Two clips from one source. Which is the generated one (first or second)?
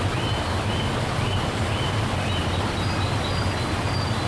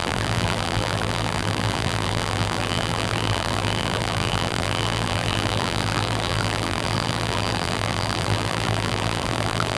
second